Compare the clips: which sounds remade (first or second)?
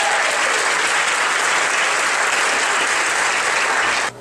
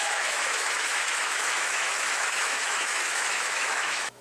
second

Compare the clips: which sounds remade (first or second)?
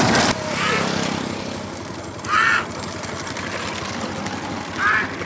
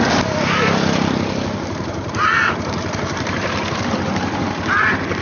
second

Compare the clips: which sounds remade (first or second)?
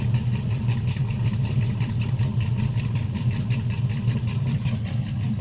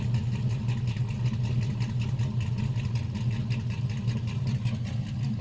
first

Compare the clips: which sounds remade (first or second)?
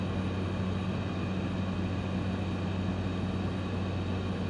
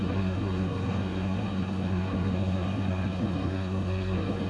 second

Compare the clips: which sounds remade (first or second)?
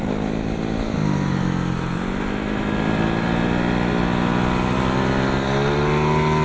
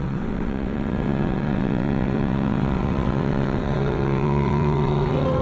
second